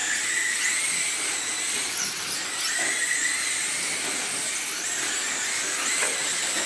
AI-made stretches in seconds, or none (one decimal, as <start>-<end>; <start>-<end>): none